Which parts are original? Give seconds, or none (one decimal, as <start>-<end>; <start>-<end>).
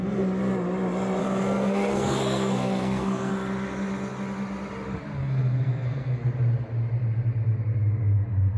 0.0-1.2; 3.3-5.2; 6.2-8.6